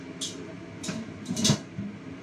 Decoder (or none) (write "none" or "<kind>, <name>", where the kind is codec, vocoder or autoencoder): none